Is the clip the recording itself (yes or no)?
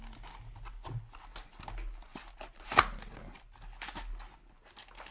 yes